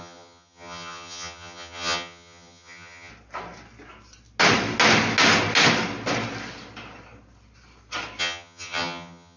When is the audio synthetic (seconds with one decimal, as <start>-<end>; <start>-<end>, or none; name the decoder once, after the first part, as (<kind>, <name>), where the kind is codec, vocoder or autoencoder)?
0.0-3.1 (vocoder, HiFi-GAN); 8.2-9.4